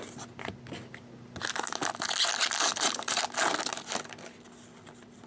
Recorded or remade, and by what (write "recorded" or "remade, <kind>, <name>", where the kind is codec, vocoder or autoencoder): recorded